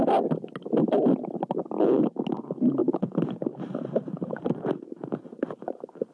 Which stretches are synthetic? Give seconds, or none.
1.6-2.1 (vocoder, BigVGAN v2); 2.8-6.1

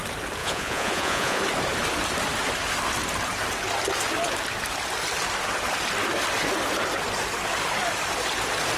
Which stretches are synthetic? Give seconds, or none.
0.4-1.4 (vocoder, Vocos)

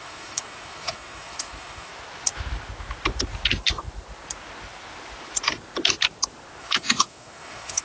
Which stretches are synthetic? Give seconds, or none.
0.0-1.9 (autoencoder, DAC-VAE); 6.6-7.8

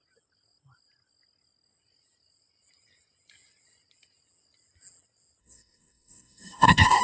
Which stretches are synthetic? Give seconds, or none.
5.4-7.0 (codec, SNAC)

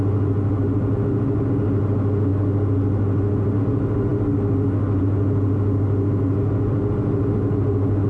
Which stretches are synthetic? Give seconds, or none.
none

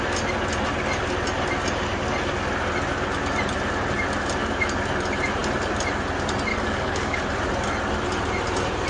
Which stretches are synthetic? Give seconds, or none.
6.5-7.2 (codec, DAC)

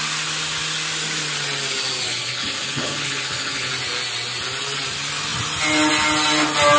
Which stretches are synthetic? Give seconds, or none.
2.1-3.7 (codec, HILCodec)